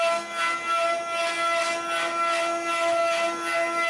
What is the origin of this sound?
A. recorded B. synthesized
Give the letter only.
A